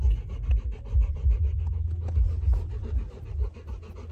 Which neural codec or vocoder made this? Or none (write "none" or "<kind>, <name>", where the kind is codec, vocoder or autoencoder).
none